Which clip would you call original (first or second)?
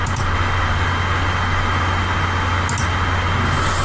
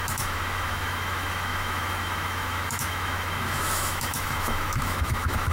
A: first